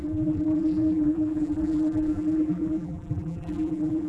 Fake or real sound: fake